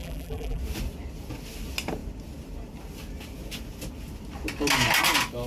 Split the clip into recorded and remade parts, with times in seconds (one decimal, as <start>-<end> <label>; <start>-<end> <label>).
0.0-0.6 remade; 0.6-5.5 recorded